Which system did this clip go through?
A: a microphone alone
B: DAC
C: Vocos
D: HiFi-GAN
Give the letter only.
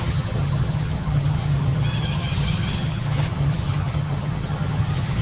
D